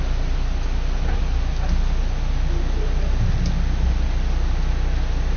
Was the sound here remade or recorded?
recorded